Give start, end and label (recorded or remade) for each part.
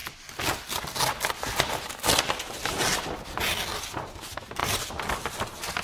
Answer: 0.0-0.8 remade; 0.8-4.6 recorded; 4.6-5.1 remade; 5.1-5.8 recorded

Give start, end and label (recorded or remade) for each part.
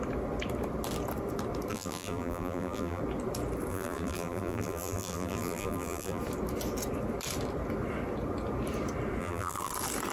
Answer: 0.0-1.7 recorded; 1.7-3.0 remade; 3.0-3.7 recorded; 3.7-6.2 remade; 6.2-9.2 recorded; 9.2-9.7 remade; 9.7-10.1 recorded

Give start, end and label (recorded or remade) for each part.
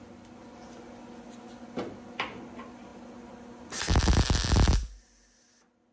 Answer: 0.0-5.9 recorded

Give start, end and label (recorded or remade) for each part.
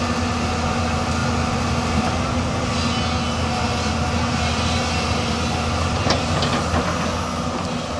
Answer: 0.0-8.0 recorded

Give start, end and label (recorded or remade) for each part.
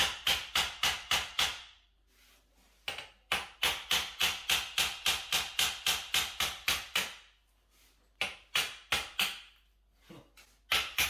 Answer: 0.0-4.2 recorded; 4.2-5.5 remade; 5.5-11.1 recorded